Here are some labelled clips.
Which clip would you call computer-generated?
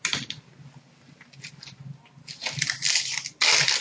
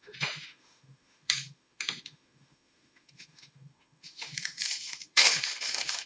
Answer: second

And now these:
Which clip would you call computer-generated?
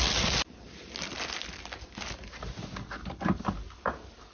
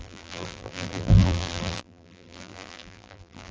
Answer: second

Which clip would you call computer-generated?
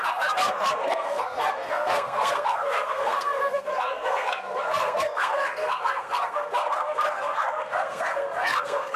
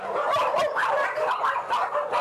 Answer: first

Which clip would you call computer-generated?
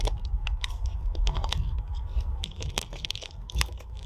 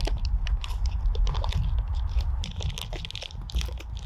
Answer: first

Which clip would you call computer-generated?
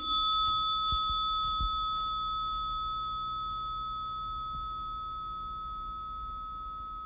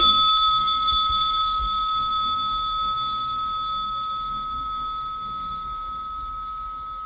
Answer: second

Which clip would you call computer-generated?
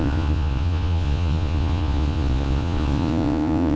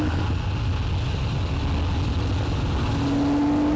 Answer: first